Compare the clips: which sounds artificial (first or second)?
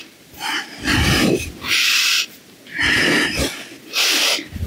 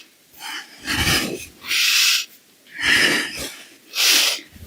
first